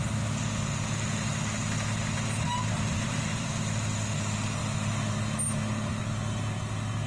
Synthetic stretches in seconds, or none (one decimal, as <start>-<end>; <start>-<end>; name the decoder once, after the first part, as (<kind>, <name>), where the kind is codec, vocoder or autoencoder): 2.7-3.5 (vocoder, BigVGAN v2)